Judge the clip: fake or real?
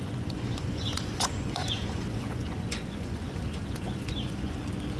fake